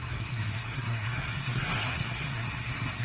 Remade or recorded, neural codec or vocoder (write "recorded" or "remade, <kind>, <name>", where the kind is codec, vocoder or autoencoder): remade, codec, SNAC